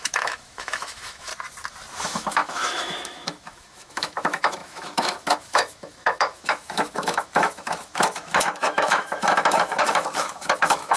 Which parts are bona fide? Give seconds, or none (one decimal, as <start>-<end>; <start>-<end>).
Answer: 1.3-2.0